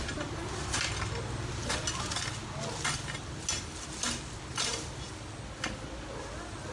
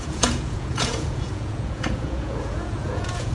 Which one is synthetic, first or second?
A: second